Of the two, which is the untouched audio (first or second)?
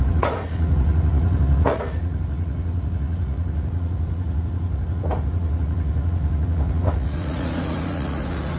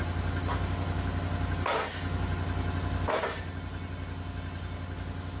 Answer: second